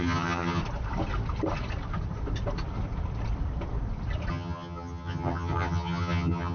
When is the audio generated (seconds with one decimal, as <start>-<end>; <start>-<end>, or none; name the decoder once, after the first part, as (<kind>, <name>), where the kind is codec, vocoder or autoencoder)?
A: 0.0-0.6 (vocoder, HiFi-GAN); 4.3-6.5